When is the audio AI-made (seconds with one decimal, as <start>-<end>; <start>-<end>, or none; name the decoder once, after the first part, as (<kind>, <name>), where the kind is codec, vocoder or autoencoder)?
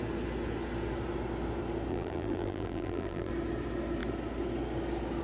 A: 1.9-3.3 (vocoder, BigVGAN v2)